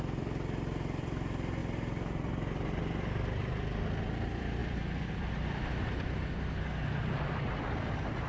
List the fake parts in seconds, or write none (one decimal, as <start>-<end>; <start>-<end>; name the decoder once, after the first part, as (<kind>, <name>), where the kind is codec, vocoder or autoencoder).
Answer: 0.0-1.6 (vocoder, BigVGAN v2); 4.0-8.3